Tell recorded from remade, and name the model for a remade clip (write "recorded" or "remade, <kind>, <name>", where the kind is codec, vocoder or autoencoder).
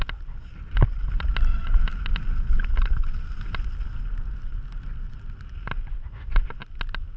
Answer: recorded